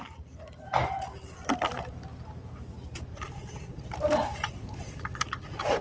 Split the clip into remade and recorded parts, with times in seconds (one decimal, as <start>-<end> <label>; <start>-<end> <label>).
0.0-3.1 recorded; 3.1-3.9 remade; 3.9-4.3 recorded; 4.3-5.8 remade